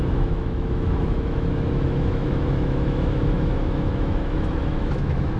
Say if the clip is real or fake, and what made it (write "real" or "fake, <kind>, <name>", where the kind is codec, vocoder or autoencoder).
fake, autoencoder, DAC-VAE